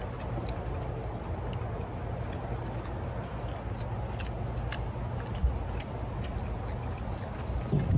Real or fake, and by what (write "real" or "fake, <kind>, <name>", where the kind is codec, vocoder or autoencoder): real